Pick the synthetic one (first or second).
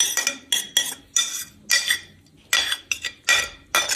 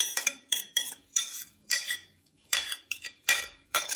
second